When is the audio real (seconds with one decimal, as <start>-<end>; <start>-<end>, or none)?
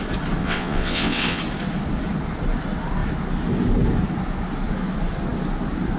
0.0-0.4; 1.4-6.0